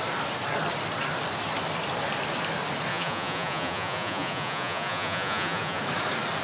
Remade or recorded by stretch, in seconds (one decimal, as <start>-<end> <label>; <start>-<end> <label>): 0.0-2.9 recorded; 2.9-5.8 remade; 5.8-6.4 recorded

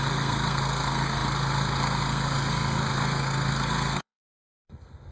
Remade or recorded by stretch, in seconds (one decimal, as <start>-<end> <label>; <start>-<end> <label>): 0.0-5.1 remade

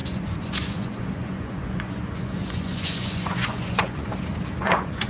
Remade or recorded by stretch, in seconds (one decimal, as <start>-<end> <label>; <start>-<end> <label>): 0.0-4.1 remade; 4.1-4.6 recorded; 4.6-5.1 remade

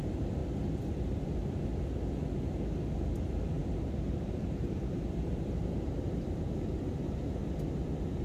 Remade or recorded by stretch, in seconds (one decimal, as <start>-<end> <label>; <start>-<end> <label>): 0.0-0.4 remade; 0.4-2.4 recorded; 2.4-7.4 remade; 7.4-8.2 recorded

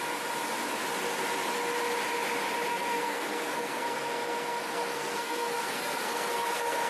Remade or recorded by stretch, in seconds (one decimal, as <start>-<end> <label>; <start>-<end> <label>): 0.0-2.7 recorded; 2.7-6.9 remade